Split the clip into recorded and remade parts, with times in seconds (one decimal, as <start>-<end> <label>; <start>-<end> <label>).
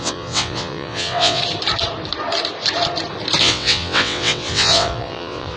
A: 0.0-1.4 remade; 1.4-3.4 recorded; 3.4-5.6 remade